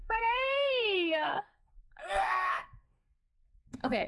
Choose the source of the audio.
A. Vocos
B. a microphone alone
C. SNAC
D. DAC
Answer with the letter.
C